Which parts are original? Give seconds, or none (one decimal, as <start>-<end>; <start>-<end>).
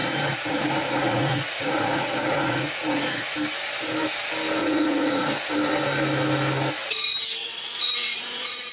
3.3-4.6; 5.3-7.4